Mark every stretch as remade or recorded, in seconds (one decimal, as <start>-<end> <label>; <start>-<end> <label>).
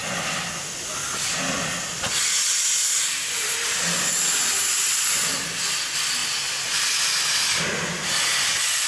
0.0-8.9 recorded